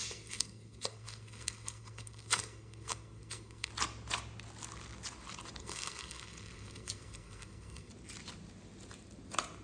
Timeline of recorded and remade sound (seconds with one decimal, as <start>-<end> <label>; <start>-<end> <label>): 0.0-3.7 remade; 3.7-5.6 recorded; 5.6-7.9 remade; 7.9-9.6 recorded